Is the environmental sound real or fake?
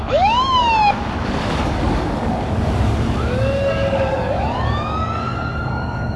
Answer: fake